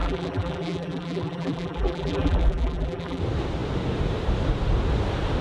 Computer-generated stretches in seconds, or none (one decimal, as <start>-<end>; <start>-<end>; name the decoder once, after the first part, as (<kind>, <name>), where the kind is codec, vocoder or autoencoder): 0.0-3.2 (vocoder, BigVGAN v2)